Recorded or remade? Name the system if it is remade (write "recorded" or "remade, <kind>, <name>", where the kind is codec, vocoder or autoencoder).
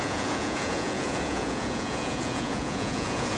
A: remade, vocoder, Vocos